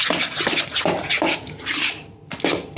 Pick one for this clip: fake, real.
real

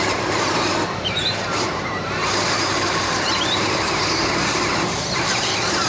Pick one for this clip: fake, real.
fake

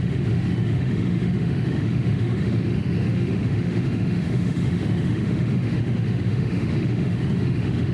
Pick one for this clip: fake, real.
fake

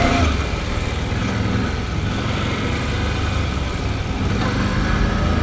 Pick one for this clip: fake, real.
real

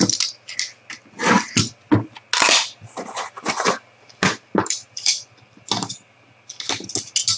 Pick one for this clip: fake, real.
real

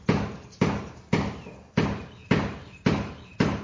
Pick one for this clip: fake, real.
real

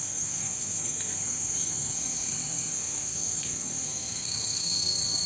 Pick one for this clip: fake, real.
fake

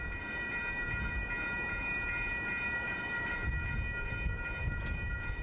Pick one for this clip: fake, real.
real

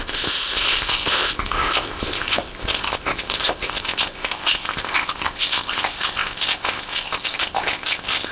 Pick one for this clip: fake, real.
fake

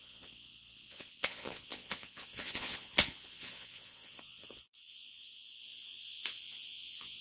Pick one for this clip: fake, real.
fake